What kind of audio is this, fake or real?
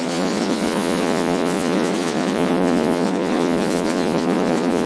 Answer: fake